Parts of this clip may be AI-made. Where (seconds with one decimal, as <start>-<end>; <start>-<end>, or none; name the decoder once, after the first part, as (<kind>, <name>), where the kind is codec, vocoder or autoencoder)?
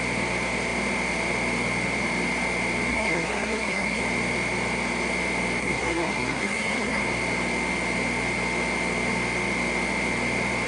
2.9-4.0 (codec, SNAC); 5.6-7.0